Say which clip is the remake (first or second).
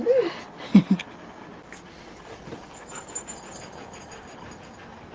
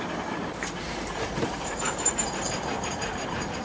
second